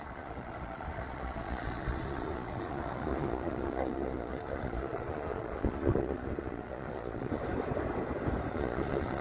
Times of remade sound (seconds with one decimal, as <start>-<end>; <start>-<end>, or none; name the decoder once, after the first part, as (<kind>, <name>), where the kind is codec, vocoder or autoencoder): 0.0-7.4 (vocoder, Vocos); 8.5-9.2